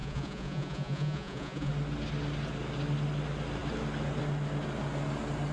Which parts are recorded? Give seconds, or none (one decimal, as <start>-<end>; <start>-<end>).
1.7-5.5